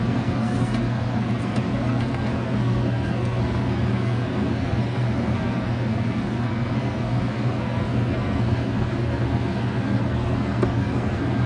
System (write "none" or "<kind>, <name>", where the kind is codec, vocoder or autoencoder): codec, SNAC